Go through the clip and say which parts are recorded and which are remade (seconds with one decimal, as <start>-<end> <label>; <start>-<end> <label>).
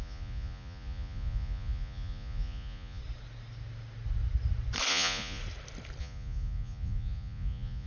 0.0-3.0 remade; 3.0-4.9 recorded; 4.9-5.4 remade; 5.4-6.0 recorded; 6.0-7.9 remade